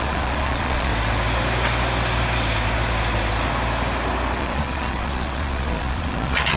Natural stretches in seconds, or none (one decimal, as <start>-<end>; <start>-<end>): 0.9-4.4